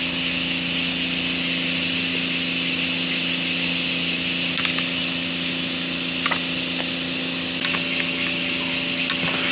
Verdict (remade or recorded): recorded